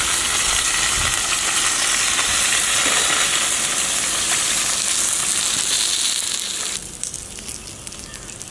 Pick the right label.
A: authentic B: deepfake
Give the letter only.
A